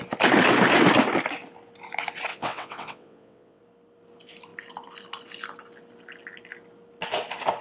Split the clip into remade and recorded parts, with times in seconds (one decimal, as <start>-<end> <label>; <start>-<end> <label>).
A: 0.0-2.3 recorded; 2.3-3.6 remade; 3.6-7.6 recorded